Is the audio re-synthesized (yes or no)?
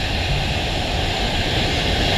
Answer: no